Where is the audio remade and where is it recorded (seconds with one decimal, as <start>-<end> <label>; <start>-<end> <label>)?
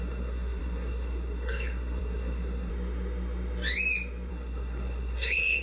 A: 0.0-2.7 remade; 2.7-4.3 recorded; 4.3-5.6 remade